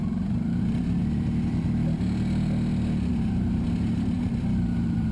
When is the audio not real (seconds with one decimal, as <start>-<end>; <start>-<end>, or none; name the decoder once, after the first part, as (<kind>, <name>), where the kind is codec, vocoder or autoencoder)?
0.0-1.0 (vocoder, BigVGAN v2); 3.1-5.1